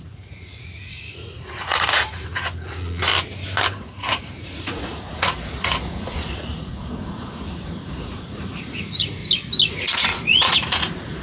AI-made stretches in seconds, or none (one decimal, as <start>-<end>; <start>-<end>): 0.0-3.1; 3.8-9.2; 9.7-11.2